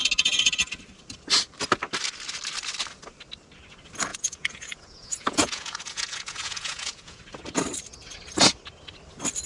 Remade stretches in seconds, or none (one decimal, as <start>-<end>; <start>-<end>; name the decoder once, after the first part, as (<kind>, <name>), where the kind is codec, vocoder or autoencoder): 4.1-7.2 (vocoder, Vocos)